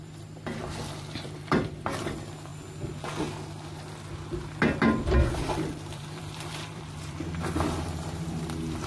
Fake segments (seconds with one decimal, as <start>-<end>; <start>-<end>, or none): 0.0-2.5; 5.1-8.9